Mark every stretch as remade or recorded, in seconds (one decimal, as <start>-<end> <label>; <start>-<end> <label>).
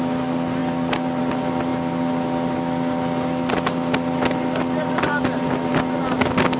0.0-6.6 recorded